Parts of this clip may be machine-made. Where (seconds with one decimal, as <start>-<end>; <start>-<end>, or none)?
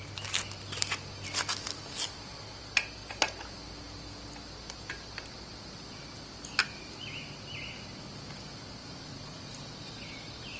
6.6-7.2; 8.8-10.6